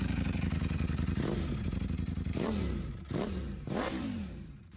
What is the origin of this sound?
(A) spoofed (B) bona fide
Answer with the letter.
A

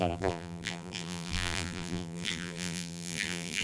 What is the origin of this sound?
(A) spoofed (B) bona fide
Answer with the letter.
A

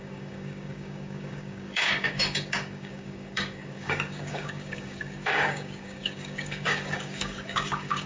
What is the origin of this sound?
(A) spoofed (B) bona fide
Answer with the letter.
A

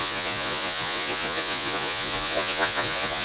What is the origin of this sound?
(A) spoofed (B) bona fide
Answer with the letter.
A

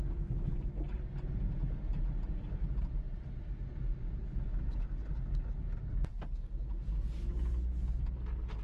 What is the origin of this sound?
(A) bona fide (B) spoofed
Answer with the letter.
A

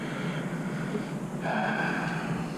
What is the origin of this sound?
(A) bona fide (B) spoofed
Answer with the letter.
A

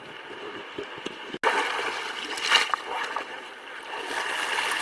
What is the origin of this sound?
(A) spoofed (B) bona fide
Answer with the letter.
B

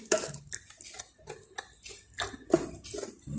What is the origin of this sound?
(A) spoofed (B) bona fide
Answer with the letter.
B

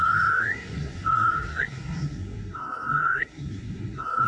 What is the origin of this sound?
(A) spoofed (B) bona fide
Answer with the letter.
A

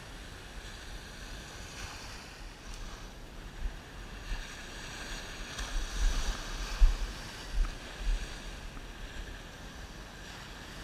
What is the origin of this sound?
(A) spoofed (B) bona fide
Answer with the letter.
B